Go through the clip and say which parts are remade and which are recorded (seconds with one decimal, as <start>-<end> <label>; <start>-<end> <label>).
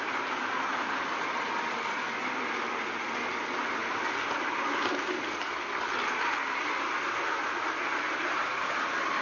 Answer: 0.0-9.2 recorded